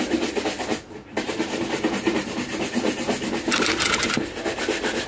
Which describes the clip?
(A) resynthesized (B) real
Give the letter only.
B